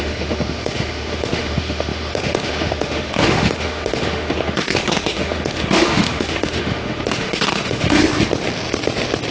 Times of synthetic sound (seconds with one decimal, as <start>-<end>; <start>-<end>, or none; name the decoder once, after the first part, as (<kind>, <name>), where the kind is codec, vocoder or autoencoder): 0.0-8.0 (autoencoder, DAC-VAE)

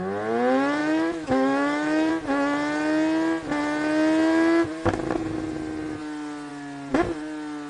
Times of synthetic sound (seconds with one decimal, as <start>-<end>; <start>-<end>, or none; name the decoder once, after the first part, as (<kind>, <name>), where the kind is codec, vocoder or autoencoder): 0.8-2.1 (autoencoder, DAC-VAE)

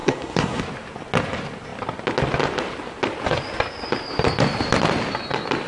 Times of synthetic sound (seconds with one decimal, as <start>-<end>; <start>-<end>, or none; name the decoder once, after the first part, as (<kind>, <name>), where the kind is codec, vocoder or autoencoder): 0.0-0.6 (codec, SNAC)